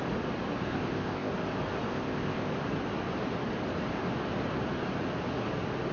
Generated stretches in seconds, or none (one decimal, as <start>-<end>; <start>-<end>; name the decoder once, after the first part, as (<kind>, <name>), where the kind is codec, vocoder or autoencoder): 0.7-1.3 (codec, ZipCodec); 1.9-2.5